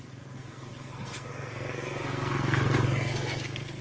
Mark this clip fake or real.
fake